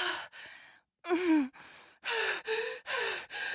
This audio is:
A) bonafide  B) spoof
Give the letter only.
A